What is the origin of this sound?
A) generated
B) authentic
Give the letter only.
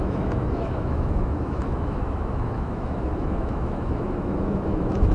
A